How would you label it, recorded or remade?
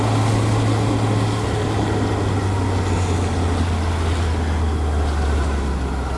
recorded